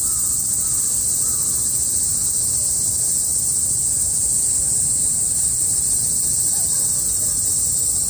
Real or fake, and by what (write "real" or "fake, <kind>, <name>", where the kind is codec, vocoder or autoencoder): real